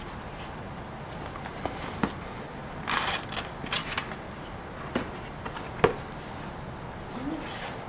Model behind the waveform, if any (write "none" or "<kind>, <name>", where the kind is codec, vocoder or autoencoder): none